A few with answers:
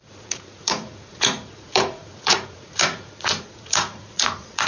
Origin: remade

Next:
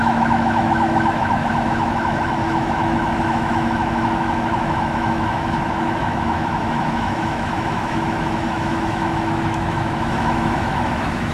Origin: remade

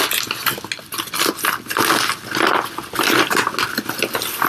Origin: recorded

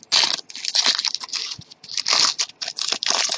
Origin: recorded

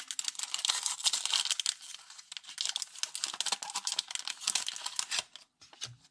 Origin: recorded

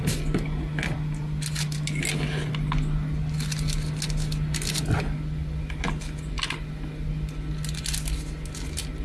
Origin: recorded